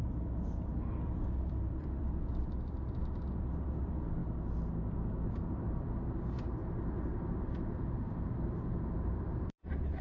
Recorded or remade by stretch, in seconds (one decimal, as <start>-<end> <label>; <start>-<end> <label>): 0.0-4.2 remade; 4.2-5.5 recorded; 5.5-6.6 remade; 6.6-7.1 recorded; 7.1-10.0 remade